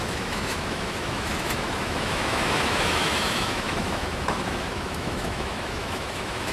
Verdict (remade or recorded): remade